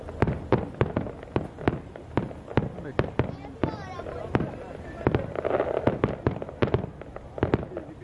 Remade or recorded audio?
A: recorded